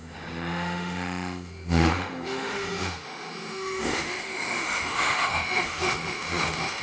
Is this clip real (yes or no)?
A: no